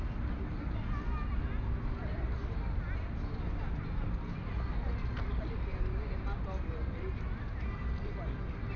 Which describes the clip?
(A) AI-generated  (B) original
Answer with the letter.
B